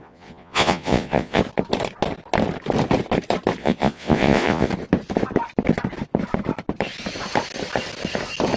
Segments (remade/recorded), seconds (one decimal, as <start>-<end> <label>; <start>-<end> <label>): 0.0-1.4 remade; 1.4-3.6 recorded; 3.6-4.7 remade; 4.7-8.6 recorded